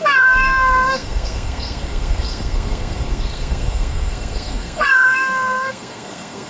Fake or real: fake